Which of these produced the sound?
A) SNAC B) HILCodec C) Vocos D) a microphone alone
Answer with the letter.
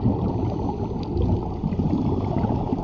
D